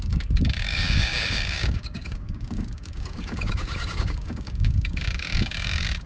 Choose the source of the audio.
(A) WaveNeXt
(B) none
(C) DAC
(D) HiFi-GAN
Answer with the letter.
C